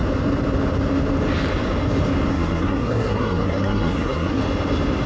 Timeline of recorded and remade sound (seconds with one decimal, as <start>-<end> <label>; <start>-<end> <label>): 0.0-2.3 recorded; 2.3-4.4 remade; 4.4-5.1 recorded